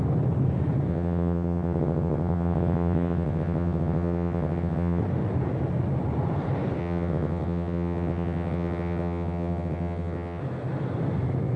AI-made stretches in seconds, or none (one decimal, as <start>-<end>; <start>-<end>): 0.9-5.0; 6.8-10.4